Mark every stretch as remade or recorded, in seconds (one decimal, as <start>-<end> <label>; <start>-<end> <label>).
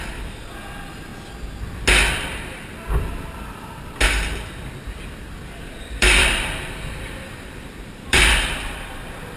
0.0-1.1 remade; 1.1-5.2 recorded; 5.2-9.4 remade